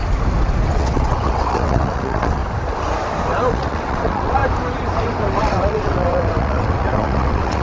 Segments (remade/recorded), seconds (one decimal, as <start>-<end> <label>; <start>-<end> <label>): 0.0-0.7 recorded; 0.7-2.4 remade; 2.4-3.5 recorded; 3.5-4.4 remade; 4.4-5.4 recorded; 5.4-7.6 remade